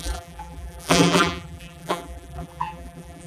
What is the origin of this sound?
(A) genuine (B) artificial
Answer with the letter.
B